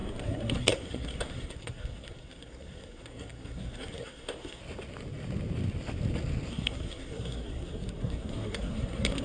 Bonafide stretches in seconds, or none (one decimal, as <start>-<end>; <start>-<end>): 4.6-6.5